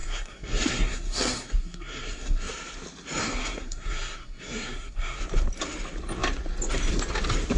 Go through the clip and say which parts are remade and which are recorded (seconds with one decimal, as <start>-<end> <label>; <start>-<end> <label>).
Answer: 0.0-2.5 remade; 2.5-3.2 recorded; 3.2-5.2 remade; 5.2-7.6 recorded